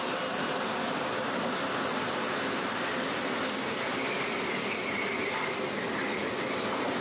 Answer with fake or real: real